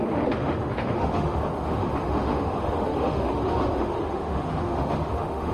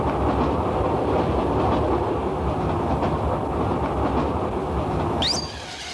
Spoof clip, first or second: first